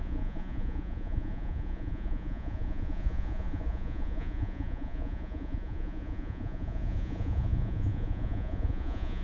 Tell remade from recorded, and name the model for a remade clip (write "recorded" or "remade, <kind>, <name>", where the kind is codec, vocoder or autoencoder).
remade, vocoder, Vocos